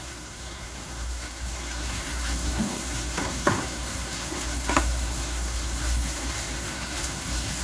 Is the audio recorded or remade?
remade